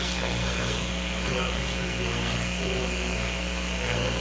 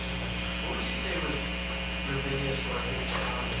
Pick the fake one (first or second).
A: first